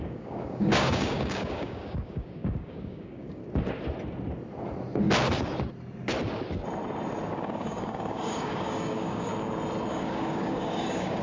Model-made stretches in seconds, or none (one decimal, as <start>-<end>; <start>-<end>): 0.0-3.4; 7.3-9.3; 9.9-11.2